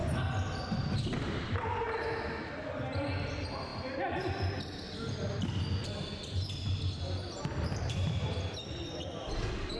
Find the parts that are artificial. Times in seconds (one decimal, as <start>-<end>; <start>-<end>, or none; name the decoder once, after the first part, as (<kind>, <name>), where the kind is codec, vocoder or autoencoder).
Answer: none

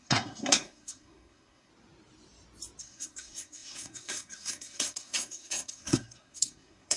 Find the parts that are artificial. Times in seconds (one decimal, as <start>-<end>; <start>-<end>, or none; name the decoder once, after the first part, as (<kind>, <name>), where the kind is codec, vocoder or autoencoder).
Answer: 0.0-1.7 (codec, SNAC); 2.8-7.0

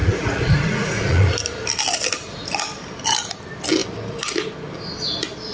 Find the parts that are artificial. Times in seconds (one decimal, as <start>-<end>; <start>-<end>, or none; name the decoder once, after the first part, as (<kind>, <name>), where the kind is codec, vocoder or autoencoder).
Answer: 0.0-1.3 (vocoder, Vocos)

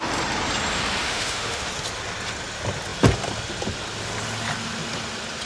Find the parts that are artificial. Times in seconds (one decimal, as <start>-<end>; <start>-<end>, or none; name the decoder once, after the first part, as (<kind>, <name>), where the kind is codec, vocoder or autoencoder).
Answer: 1.0-1.7 (autoencoder, DAC-VAE)

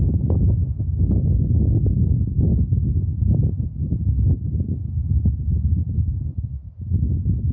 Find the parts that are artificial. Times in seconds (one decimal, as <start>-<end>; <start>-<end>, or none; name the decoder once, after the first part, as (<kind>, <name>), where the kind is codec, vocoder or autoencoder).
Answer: none